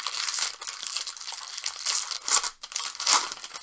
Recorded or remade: recorded